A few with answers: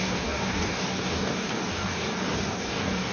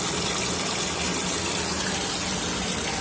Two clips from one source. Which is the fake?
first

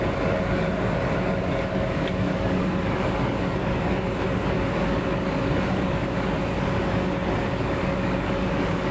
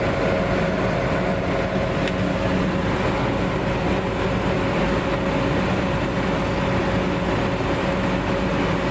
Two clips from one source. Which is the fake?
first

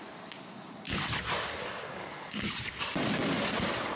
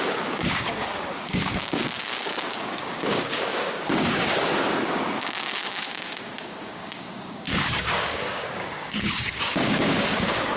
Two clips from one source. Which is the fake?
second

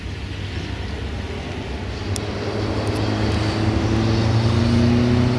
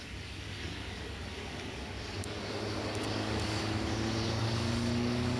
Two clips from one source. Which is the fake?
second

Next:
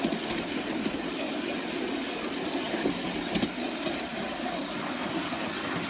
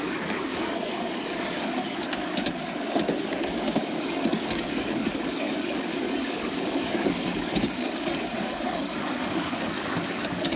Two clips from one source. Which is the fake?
second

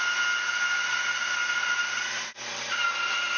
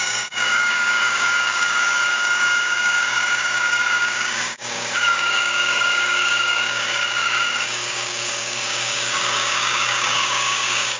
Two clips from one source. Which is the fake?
second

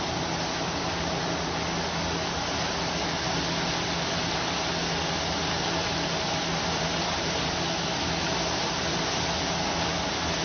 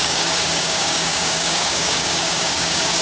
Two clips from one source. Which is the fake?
second